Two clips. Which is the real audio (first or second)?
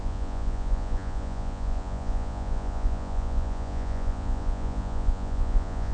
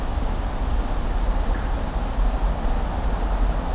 second